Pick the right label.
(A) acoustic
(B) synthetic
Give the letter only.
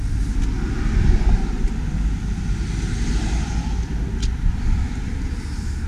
A